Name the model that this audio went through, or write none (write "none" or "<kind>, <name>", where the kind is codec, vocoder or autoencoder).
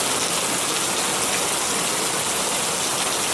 none